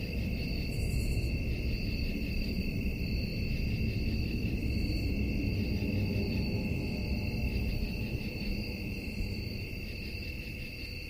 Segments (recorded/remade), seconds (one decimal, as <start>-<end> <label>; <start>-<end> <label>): 0.0-3.3 remade; 3.3-7.7 recorded; 7.7-11.1 remade

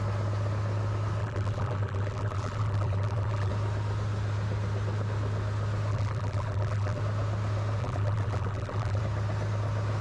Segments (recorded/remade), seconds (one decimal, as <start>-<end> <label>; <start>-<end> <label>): 0.0-1.2 recorded; 1.2-3.5 remade; 3.5-5.9 recorded; 5.9-7.0 remade; 7.0-7.8 recorded; 7.8-9.0 remade; 9.0-10.0 recorded

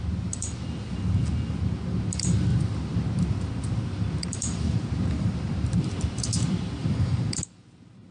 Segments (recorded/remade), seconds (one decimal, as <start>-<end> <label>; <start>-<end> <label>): 0.0-2.5 recorded; 2.5-7.4 remade; 7.4-8.1 recorded

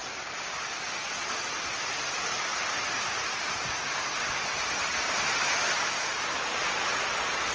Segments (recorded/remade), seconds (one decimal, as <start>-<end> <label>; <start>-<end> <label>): 0.0-0.5 remade; 0.5-7.5 recorded

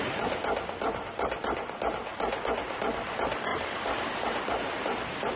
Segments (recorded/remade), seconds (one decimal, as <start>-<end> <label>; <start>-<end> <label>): 0.0-5.4 recorded

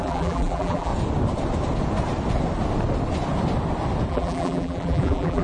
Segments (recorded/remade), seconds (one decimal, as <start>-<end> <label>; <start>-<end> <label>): 0.0-0.9 remade; 0.9-4.1 recorded; 4.1-5.4 remade

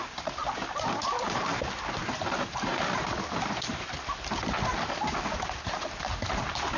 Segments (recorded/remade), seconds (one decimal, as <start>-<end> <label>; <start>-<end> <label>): 0.0-0.4 recorded; 0.4-1.1 remade; 1.1-2.0 recorded; 2.0-6.1 remade; 6.1-6.8 recorded